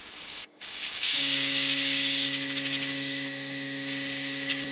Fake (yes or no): yes